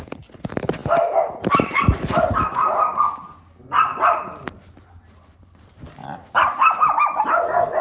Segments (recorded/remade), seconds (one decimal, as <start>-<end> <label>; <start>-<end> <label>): 0.0-3.9 recorded; 3.9-5.8 remade; 5.8-7.8 recorded